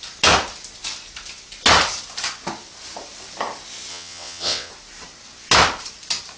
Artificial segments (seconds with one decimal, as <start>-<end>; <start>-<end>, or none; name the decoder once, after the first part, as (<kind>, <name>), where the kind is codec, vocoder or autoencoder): 3.9-4.7 (vocoder, WaveNeXt)